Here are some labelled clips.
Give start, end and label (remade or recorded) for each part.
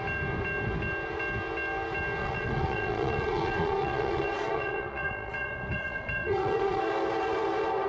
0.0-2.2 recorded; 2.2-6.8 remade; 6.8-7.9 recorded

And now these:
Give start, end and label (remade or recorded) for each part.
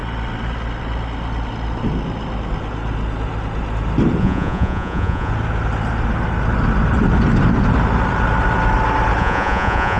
0.0-4.2 recorded; 4.2-5.3 remade; 5.3-9.2 recorded; 9.2-10.0 remade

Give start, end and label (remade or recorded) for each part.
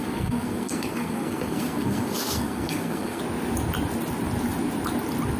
0.0-3.2 remade; 3.2-5.4 recorded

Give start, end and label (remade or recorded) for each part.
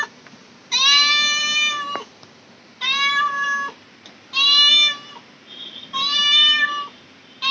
0.0-7.5 recorded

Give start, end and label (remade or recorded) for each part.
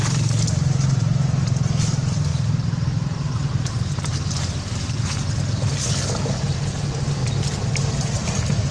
0.0-8.7 recorded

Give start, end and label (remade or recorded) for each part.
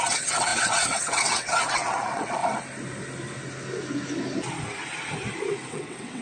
0.0-2.4 remade; 2.4-5.7 recorded; 5.7-6.2 remade